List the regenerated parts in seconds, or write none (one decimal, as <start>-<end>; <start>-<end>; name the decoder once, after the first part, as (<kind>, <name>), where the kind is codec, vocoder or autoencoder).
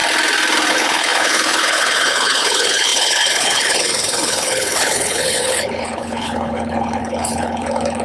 0.7-8.0 (codec, HILCodec)